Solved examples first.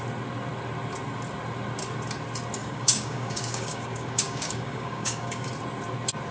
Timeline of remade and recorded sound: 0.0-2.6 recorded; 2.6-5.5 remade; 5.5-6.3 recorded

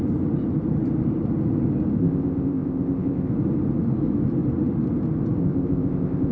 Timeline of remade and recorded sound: 0.0-2.0 recorded; 2.0-3.3 remade; 3.3-5.4 recorded; 5.4-6.3 remade

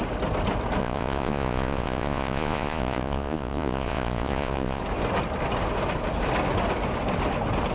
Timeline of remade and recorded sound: 0.0-0.8 recorded; 0.8-4.8 remade; 4.8-7.7 recorded

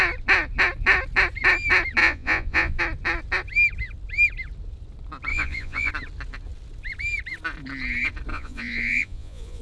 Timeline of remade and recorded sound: 0.0-2.0 recorded; 2.0-2.8 remade; 2.8-5.3 recorded; 5.3-5.9 remade; 5.9-8.3 recorded; 8.3-9.6 remade

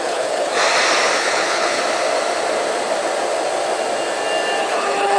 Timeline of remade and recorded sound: 0.0-0.5 remade; 0.5-1.2 recorded; 1.2-1.8 remade; 1.8-4.6 recorded; 4.6-5.2 remade

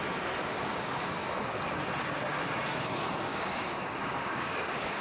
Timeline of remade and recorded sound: 0.0-0.5 recorded; 0.5-1.1 remade; 1.1-3.3 recorded; 3.3-5.0 remade

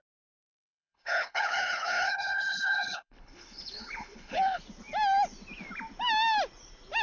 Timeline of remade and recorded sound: 0.0-0.4 recorded; 0.4-4.6 remade; 4.6-7.0 recorded

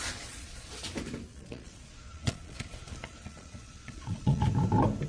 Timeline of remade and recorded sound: 0.0-0.7 remade; 0.7-1.3 recorded; 1.3-4.4 remade; 4.4-5.1 recorded